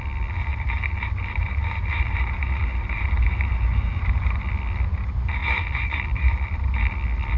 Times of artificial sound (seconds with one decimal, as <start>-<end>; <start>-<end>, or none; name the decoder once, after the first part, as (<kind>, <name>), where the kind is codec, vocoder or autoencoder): 0.5-4.4 (vocoder, BigVGAN v2)